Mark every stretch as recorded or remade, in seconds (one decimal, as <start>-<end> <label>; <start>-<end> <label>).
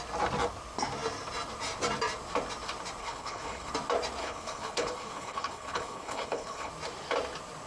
0.0-3.0 recorded; 3.0-3.7 remade; 3.7-4.2 recorded; 4.2-6.7 remade; 6.7-7.7 recorded